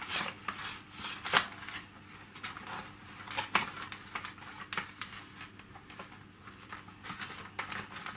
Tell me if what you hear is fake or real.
real